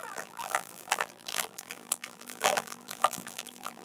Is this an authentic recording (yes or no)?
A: no